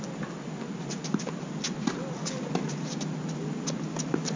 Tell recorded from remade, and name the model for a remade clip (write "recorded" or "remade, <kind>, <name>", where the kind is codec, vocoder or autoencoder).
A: recorded